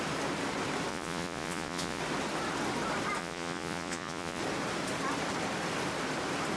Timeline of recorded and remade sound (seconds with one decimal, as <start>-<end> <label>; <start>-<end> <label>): 0.0-0.9 recorded; 0.9-2.0 remade; 2.0-3.2 recorded; 3.2-4.4 remade; 4.4-6.6 recorded